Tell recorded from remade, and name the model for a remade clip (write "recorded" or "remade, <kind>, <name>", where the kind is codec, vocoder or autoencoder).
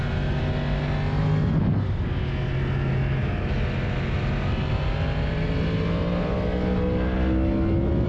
recorded